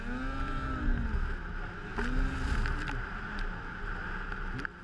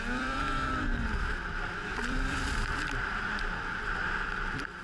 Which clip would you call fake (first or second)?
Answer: second